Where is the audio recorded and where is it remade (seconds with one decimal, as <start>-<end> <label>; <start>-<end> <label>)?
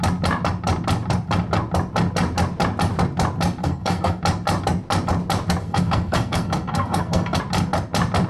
0.0-3.6 recorded; 3.6-4.2 remade; 4.2-5.6 recorded; 5.6-7.4 remade; 7.4-8.3 recorded